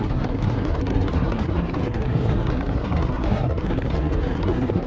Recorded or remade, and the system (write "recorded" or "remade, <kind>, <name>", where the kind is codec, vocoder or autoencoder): remade, codec, SNAC